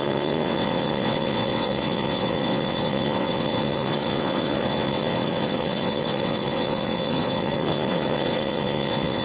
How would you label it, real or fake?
fake